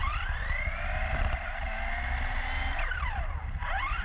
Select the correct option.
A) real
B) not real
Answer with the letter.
A